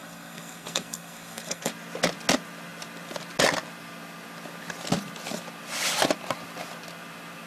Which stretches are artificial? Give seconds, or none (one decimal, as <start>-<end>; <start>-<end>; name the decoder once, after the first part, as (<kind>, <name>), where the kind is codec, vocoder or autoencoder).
0.0-1.7 (codec, SNAC)